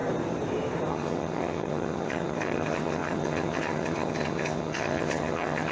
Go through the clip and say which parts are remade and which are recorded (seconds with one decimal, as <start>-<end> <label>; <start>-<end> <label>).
0.0-0.9 recorded; 0.9-5.7 remade